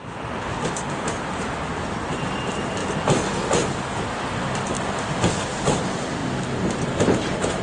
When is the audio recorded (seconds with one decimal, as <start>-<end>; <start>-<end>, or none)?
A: 2.8-5.8; 6.2-7.6